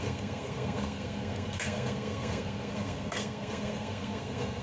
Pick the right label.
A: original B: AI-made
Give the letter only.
B